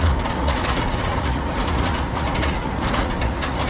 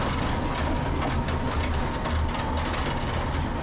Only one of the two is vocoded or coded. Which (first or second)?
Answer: first